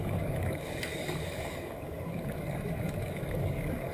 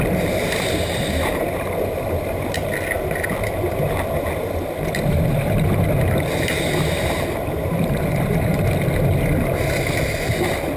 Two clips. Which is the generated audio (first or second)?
first